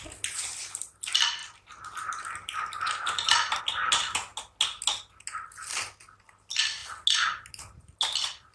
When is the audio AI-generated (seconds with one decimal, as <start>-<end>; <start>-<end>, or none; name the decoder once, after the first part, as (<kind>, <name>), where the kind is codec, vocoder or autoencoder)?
1.4-3.6 (vocoder, BigVGAN v2)